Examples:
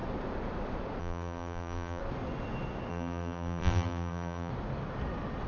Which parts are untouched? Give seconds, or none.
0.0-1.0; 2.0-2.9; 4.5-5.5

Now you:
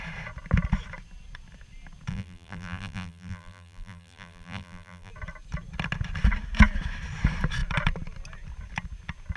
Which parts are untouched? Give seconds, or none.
0.0-2.1; 5.1-9.4

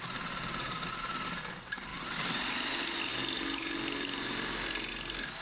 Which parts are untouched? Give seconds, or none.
0.0-5.4

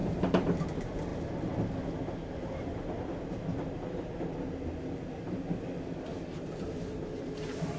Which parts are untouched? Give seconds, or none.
0.6-6.1

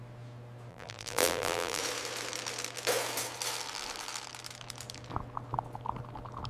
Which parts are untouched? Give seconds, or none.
0.0-0.7; 1.8-6.5

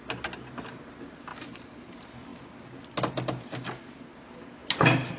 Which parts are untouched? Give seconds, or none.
0.0-1.3; 1.9-5.2